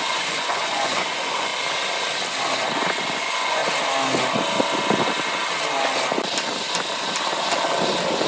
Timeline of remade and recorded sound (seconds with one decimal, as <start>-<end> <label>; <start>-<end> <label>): 0.0-1.5 remade; 1.5-3.1 recorded; 3.1-3.6 remade; 3.6-8.3 recorded